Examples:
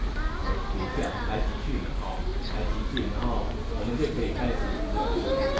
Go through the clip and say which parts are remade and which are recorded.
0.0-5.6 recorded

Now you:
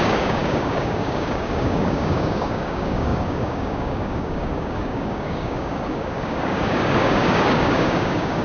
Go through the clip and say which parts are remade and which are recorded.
0.0-8.4 remade

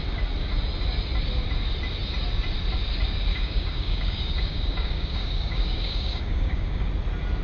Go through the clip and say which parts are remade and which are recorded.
0.0-3.3 recorded; 3.3-6.9 remade; 6.9-7.4 recorded

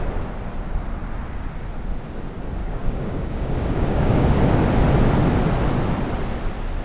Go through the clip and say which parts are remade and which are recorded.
0.0-2.6 recorded; 2.6-4.4 remade; 4.4-6.8 recorded